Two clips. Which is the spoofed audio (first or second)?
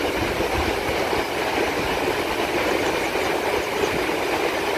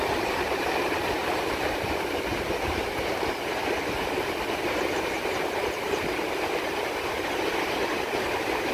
second